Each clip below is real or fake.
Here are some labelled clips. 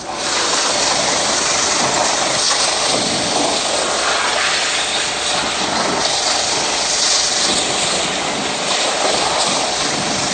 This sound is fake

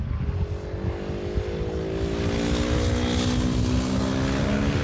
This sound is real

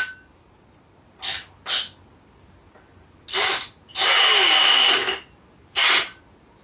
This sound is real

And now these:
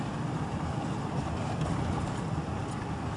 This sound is fake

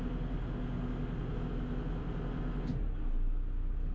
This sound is real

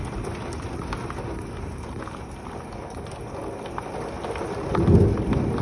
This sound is real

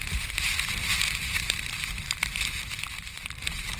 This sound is fake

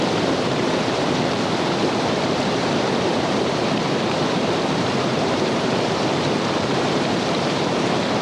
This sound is fake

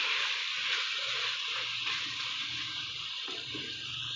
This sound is fake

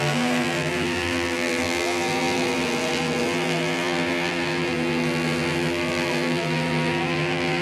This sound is fake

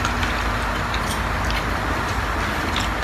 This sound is real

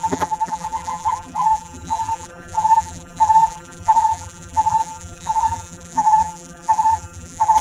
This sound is fake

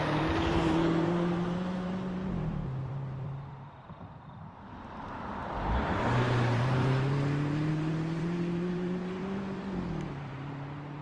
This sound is fake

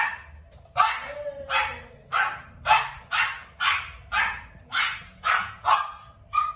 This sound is real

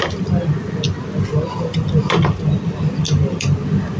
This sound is real